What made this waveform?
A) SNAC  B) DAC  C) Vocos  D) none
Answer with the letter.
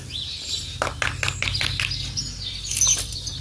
D